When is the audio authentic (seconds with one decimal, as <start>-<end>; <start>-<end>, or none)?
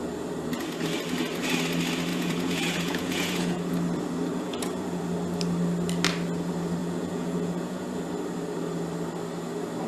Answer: 0.0-2.1; 3.7-4.3; 5.0-6.8; 8.0-9.9